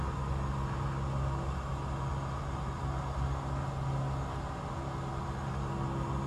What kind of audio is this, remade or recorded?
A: recorded